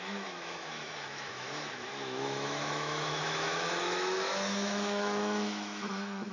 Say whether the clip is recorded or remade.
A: remade